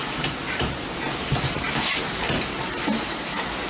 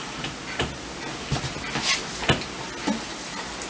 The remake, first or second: first